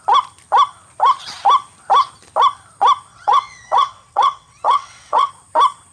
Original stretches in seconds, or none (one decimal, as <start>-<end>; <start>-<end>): 0.0-3.1; 5.3-5.9